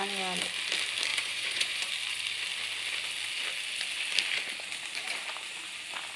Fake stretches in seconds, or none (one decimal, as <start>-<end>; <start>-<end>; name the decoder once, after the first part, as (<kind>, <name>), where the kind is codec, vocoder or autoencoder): 1.1-1.9 (vocoder, Vocos)